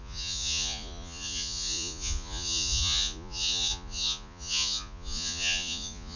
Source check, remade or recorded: remade